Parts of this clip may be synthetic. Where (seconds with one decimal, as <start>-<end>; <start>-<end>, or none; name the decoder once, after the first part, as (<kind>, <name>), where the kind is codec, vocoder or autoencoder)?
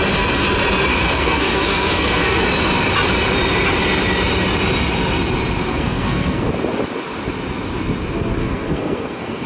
0.9-2.4 (codec, SNAC); 5.6-6.5; 8.4-9.5